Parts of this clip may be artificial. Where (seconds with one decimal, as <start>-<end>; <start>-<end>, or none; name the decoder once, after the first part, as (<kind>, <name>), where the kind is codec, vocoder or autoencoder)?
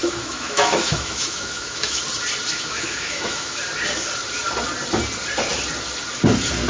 0.0-2.0 (autoencoder, DAC-VAE); 2.5-3.6